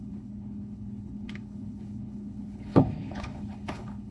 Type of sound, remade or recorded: remade